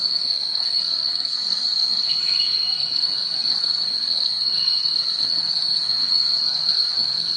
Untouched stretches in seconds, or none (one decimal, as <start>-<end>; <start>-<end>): none